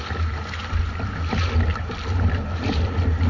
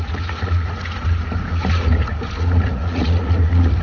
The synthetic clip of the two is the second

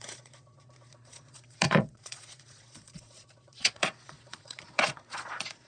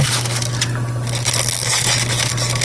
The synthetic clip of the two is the first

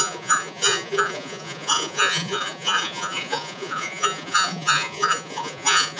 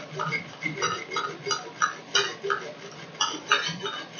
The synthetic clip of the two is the first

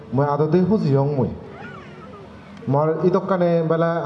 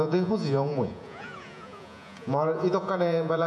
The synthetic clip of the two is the second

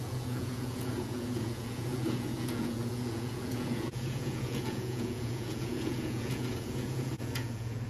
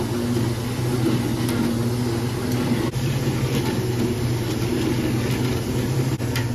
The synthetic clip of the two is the first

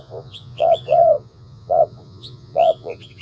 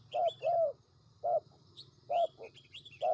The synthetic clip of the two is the first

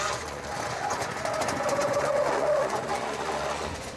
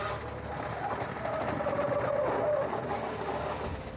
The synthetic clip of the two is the first